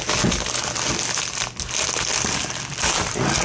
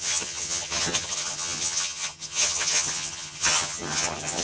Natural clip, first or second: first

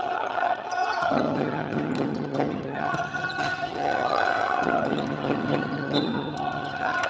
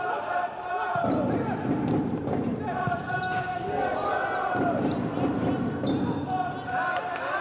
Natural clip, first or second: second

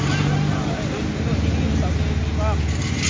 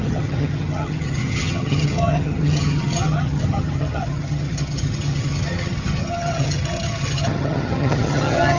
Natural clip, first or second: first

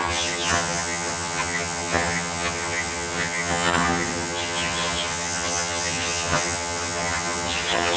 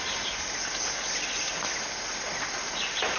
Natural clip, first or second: second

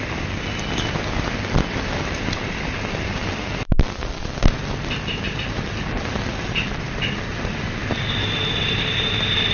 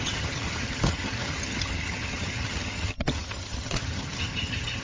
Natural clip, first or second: first